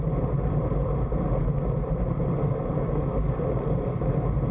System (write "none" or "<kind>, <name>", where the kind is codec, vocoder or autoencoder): none